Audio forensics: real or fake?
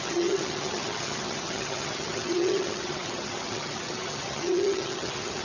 fake